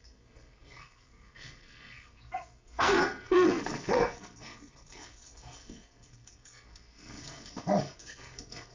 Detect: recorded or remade remade